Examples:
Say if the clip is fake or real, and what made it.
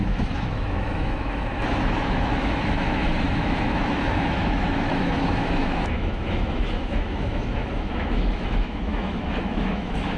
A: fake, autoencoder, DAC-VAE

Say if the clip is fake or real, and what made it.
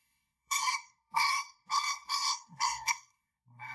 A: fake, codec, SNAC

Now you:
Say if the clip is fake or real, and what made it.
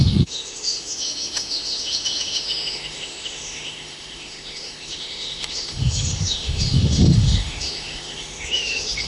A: fake, autoencoder, DAC-VAE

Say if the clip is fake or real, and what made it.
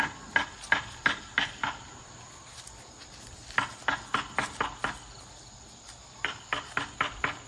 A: real